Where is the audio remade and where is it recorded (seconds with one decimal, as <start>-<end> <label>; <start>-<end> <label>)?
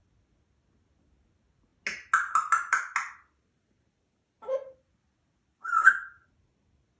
0.0-7.0 recorded